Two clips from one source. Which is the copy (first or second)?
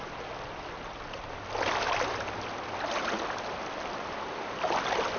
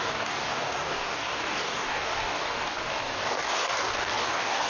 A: second